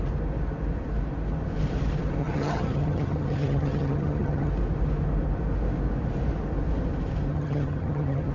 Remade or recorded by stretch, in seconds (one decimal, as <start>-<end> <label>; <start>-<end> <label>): 0.0-2.2 recorded; 2.2-4.5 remade; 4.5-7.3 recorded; 7.3-8.3 remade